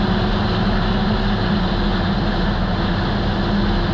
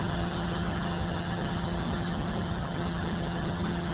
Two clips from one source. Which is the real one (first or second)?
first